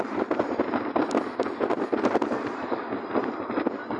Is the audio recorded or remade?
recorded